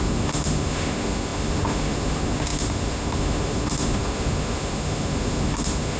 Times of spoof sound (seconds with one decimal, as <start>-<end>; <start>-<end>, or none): 0.0-6.0